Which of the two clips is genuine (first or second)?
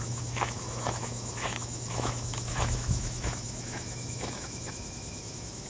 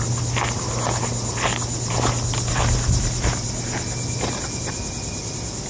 second